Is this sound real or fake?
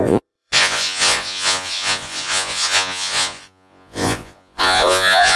fake